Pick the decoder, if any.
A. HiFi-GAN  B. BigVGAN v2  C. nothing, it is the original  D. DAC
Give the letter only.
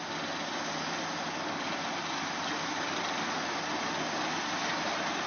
C